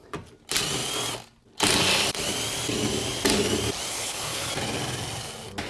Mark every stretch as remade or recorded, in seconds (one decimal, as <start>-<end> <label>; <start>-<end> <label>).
0.0-3.9 recorded; 3.9-4.5 remade; 4.5-5.7 recorded